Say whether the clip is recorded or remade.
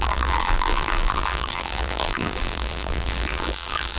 remade